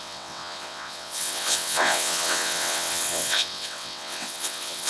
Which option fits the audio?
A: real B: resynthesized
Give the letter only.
B